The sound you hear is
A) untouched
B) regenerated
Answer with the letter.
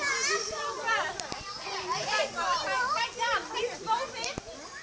A